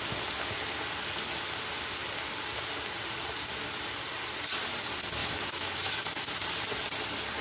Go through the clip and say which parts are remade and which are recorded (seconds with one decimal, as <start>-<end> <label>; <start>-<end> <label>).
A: 0.0-5.2 recorded; 5.2-5.9 remade; 5.9-7.4 recorded